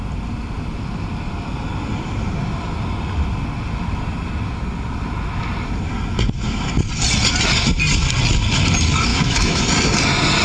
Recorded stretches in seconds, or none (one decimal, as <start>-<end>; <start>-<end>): 0.0-9.1; 9.6-10.4